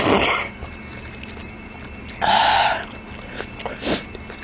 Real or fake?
real